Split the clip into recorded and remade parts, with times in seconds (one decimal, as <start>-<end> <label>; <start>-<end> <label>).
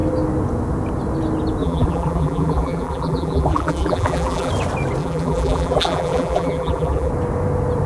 0.0-1.6 recorded; 1.6-4.5 remade; 4.5-5.0 recorded; 5.0-7.1 remade; 7.1-7.9 recorded